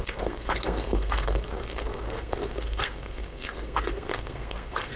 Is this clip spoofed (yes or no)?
yes